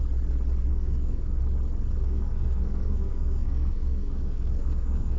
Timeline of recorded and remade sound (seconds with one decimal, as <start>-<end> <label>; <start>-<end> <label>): 0.0-0.7 recorded; 0.7-1.4 remade; 1.4-2.0 recorded; 2.0-5.2 remade